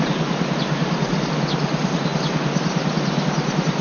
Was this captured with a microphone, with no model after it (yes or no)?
yes